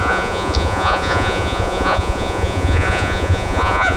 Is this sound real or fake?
fake